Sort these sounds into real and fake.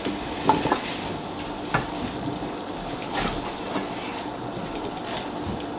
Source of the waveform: real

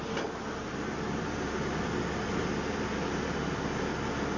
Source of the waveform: real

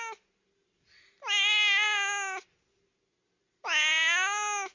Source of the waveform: real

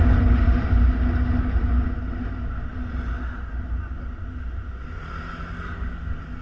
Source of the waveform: real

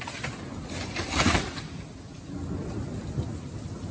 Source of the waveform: real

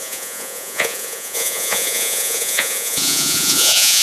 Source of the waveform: fake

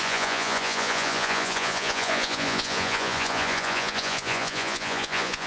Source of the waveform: fake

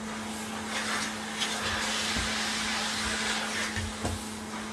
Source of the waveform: real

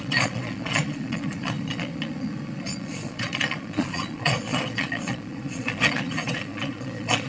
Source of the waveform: fake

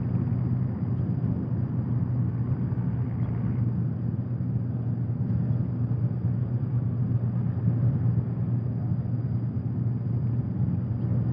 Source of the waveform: real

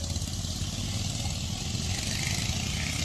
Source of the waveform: real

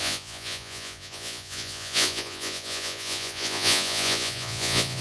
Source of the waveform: fake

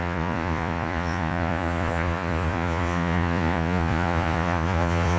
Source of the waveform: fake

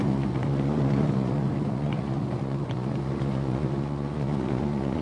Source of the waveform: fake